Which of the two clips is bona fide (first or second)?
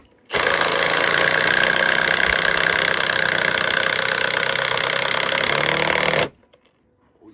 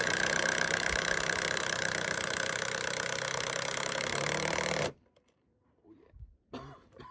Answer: first